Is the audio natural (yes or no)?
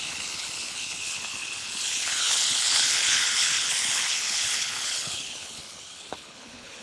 no